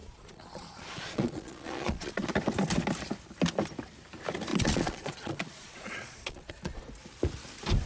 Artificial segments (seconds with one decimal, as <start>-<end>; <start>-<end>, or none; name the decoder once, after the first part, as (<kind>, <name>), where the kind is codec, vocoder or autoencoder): 0.0-2.3 (vocoder, Vocos); 4.5-6.8